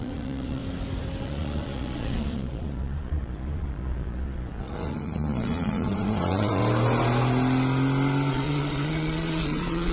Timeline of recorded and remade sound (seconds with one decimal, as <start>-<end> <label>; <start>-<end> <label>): 0.0-0.6 remade; 0.6-1.2 recorded; 1.2-6.6 remade; 6.6-8.3 recorded; 8.3-9.9 remade